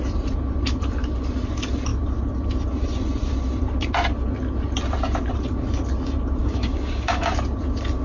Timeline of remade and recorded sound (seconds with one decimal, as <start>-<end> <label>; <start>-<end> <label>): 0.0-6.4 recorded; 6.4-7.3 remade; 7.3-8.0 recorded